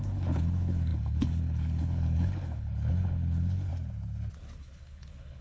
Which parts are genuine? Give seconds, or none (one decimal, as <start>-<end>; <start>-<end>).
3.7-4.6